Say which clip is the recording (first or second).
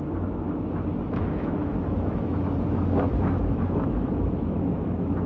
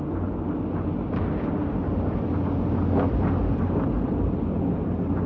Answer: second